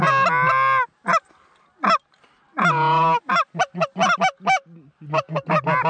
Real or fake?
real